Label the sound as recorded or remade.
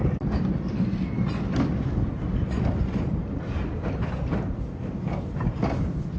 recorded